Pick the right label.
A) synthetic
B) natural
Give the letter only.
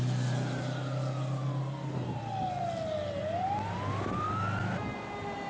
B